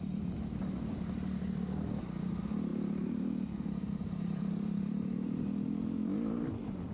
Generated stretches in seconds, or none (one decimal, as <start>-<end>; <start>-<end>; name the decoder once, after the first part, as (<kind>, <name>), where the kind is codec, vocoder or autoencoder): 2.7-5.4 (vocoder, BigVGAN v2)